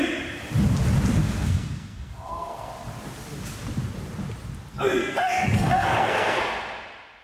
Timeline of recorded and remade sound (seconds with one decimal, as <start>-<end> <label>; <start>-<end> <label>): 0.0-1.2 recorded; 1.2-2.7 remade; 2.7-4.7 recorded; 4.7-6.4 remade; 6.4-7.2 recorded